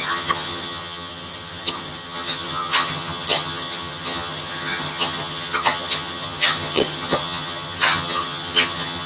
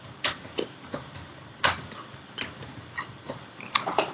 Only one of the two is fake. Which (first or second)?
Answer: first